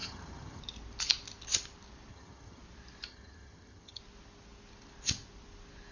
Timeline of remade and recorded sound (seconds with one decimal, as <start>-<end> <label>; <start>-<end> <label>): 0.0-0.6 remade; 0.6-2.1 recorded; 2.1-2.6 remade; 2.6-3.1 recorded; 3.1-4.0 remade; 4.0-5.9 recorded

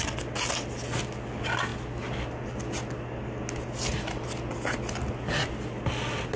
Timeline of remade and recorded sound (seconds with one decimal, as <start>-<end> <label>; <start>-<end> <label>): 0.0-6.4 recorded

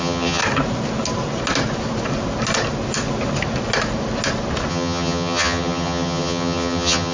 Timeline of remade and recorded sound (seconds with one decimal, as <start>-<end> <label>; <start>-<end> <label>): 0.0-0.4 remade; 0.4-4.7 recorded; 4.7-7.1 remade

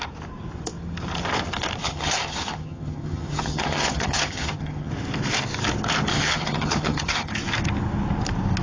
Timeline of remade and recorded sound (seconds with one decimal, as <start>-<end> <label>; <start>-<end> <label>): 0.0-1.8 recorded; 1.8-4.9 remade; 4.9-6.1 recorded; 6.1-7.3 remade; 7.3-8.6 recorded

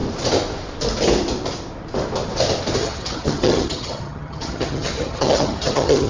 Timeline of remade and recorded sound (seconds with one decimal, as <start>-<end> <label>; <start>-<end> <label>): 0.0-2.8 recorded; 2.8-6.1 remade

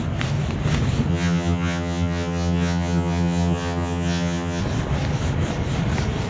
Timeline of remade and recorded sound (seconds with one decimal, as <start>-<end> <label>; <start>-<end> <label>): 0.0-1.1 recorded; 1.1-4.6 remade; 4.6-6.3 recorded

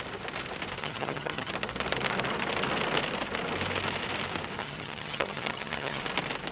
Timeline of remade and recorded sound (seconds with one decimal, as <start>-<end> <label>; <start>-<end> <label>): 0.0-0.8 recorded; 0.8-1.5 remade; 1.5-4.6 recorded; 4.6-6.0 remade; 6.0-6.5 recorded